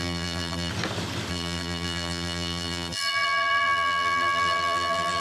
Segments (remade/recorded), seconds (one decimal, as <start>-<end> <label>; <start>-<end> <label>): 0.0-0.7 remade; 0.7-1.3 recorded; 1.3-5.2 remade